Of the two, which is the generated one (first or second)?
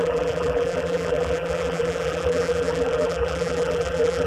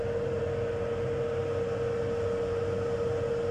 first